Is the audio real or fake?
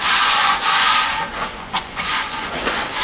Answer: fake